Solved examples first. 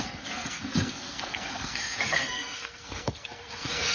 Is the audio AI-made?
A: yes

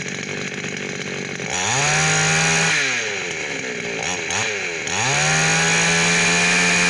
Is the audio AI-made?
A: no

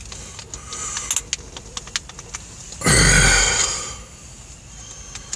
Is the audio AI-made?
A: no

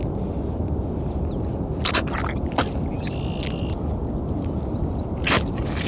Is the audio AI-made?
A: no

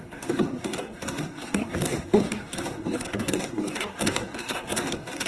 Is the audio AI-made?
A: yes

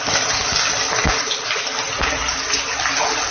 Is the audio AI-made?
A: no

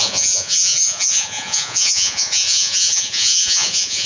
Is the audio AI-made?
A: yes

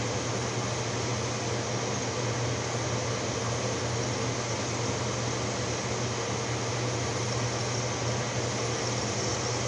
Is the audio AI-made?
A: no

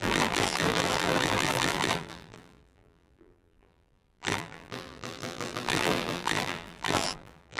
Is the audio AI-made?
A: yes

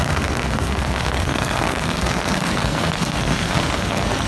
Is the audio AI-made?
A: yes